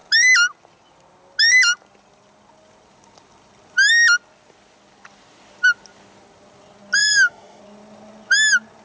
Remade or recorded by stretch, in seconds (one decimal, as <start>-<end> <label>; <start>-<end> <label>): 0.0-7.0 recorded; 7.0-7.6 remade; 7.6-8.8 recorded